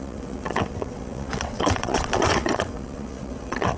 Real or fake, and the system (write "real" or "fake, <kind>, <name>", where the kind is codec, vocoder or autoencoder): fake, vocoder, WaveNeXt